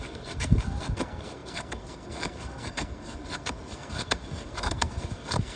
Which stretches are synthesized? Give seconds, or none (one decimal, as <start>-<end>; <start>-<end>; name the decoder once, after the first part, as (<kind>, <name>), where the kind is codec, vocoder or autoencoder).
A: 0.0-5.6 (codec, SNAC)